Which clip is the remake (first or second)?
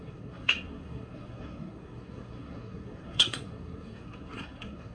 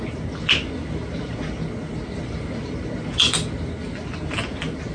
first